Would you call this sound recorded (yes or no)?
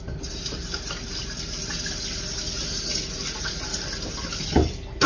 yes